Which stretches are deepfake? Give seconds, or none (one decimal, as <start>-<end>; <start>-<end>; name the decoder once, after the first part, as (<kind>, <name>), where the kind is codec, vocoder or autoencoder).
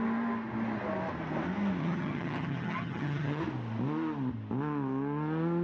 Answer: 1.8-3.4 (vocoder, HiFi-GAN)